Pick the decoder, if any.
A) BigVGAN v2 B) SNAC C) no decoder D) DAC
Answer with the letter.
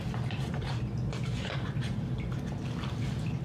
C